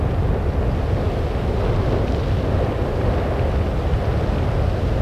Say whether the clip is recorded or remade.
recorded